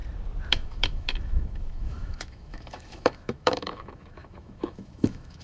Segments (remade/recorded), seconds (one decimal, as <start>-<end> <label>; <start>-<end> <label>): 0.0-0.5 recorded; 0.5-5.4 remade